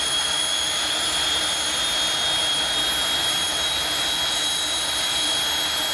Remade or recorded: recorded